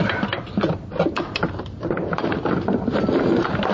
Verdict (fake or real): fake